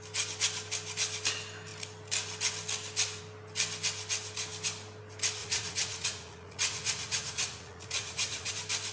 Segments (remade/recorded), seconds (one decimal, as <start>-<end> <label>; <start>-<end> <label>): 0.0-5.4 recorded; 5.4-8.5 remade; 8.5-8.9 recorded